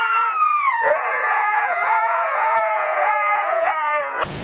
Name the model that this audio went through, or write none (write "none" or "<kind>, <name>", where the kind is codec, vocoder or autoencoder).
vocoder, Vocos